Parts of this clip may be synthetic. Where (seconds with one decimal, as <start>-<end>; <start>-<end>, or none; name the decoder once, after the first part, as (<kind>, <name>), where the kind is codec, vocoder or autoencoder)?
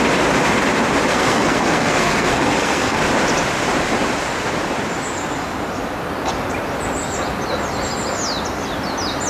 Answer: 1.1-3.0 (codec, SNAC)